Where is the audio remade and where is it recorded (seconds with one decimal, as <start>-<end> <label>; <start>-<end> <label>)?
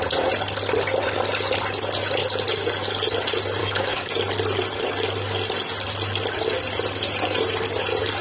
0.0-3.6 recorded; 3.6-4.1 remade; 4.1-8.2 recorded